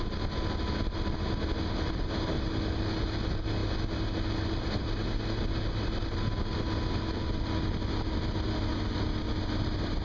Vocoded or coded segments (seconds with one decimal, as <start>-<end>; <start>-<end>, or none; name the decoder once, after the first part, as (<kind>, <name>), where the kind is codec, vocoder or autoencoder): none

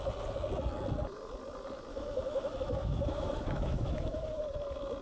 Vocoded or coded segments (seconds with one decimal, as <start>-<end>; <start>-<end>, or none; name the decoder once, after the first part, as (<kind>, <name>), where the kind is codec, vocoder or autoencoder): 1.9-4.4 (autoencoder, DAC-VAE)

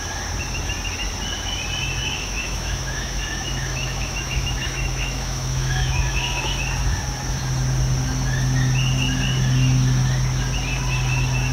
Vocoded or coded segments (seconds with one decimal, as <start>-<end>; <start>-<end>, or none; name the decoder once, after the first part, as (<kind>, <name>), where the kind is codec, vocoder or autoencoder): 2.0-6.5 (autoencoder, DAC-VAE)

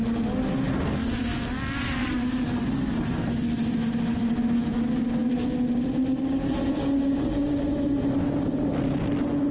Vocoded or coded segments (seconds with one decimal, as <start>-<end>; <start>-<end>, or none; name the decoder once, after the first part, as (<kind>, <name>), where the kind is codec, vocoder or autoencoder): none

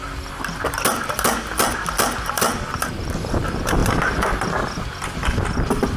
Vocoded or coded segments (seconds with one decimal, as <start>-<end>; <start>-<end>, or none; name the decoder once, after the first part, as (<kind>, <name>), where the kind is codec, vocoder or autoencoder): none

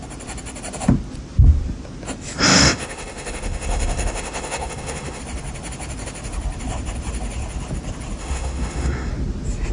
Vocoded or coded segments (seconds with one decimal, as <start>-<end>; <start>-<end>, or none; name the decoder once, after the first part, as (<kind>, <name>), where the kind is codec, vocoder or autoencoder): 2.5-5.2 (autoencoder, DAC-VAE); 8.2-9.1

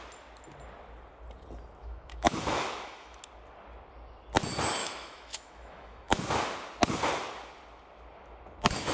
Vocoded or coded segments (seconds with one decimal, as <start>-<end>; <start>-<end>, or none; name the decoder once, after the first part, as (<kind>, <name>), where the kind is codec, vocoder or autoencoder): 1.8-3.2 (autoencoder, DAC-VAE); 4.8-6.2

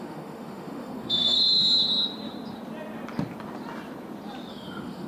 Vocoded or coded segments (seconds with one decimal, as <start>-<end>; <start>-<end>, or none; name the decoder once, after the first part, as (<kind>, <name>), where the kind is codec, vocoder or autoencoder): 0.0-1.4 (autoencoder, DAC-VAE); 4.5-5.1